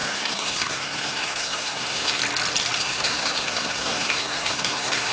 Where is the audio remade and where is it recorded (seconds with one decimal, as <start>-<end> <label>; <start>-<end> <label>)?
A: 0.0-2.2 remade; 2.2-2.8 recorded; 2.8-5.1 remade